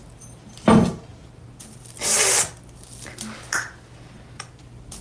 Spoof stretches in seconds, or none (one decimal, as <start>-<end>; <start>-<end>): none